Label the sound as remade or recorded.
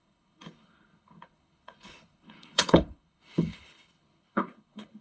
remade